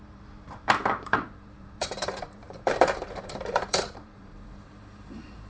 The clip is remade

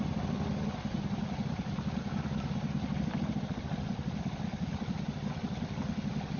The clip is recorded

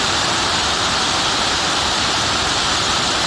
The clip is remade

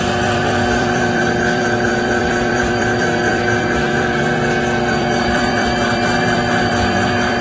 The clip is remade